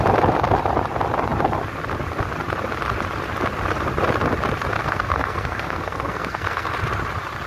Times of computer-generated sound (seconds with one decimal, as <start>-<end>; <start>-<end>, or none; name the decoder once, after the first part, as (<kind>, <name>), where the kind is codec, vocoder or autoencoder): 4.8-6.7 (codec, SNAC)